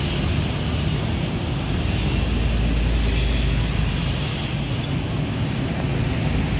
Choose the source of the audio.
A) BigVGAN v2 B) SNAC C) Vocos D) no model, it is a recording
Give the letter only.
D